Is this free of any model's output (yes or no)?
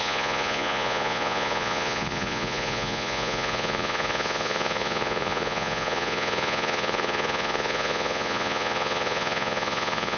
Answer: no